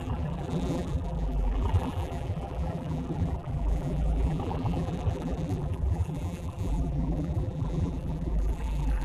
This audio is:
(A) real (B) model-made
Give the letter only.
B